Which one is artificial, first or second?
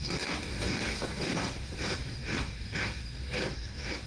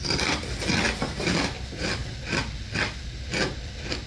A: first